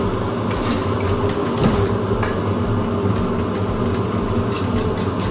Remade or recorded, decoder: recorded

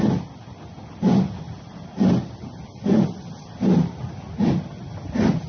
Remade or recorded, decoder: recorded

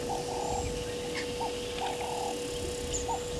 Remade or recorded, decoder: recorded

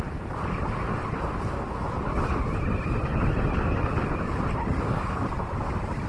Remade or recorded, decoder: recorded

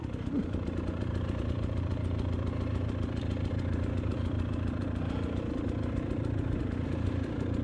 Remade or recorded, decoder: remade, vocoder, BigVGAN v2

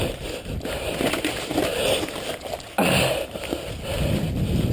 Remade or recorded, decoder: recorded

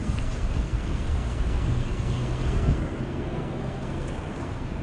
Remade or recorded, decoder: remade, codec, SNAC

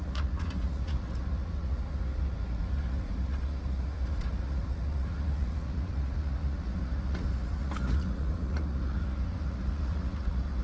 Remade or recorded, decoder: remade, vocoder, Vocos